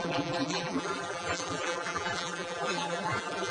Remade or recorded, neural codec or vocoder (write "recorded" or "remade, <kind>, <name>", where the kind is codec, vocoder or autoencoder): remade, vocoder, BigVGAN v2